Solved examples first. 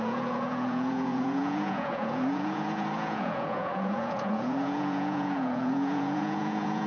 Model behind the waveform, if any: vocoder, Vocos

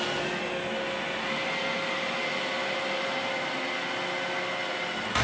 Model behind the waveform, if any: none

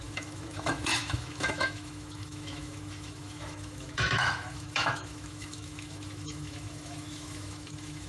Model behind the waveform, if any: autoencoder, DAC-VAE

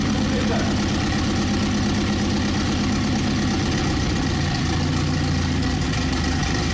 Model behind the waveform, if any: none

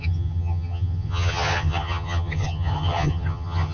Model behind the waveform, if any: vocoder, HiFi-GAN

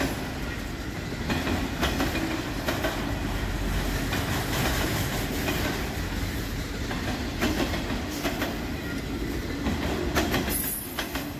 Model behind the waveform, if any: none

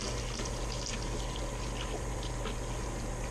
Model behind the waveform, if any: none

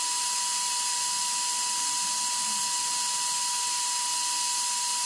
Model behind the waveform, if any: none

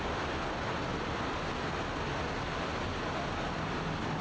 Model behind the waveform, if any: none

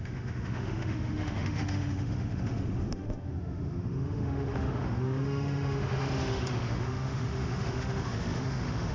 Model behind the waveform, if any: autoencoder, DAC-VAE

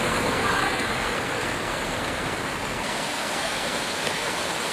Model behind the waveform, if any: codec, SNAC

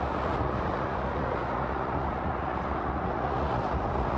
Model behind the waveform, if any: vocoder, Vocos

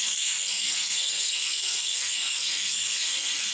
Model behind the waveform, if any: codec, SNAC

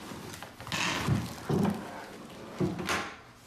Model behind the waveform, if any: none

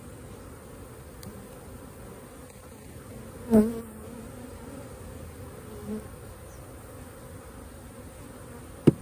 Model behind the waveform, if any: none